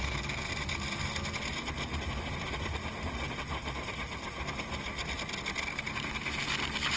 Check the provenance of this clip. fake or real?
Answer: real